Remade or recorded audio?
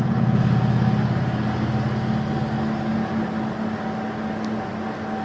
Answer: recorded